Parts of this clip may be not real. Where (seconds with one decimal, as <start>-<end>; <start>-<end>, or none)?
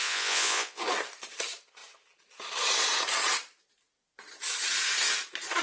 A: 0.0-0.8